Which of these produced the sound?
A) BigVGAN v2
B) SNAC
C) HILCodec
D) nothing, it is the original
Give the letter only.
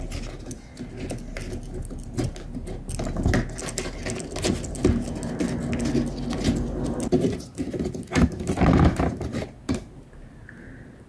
D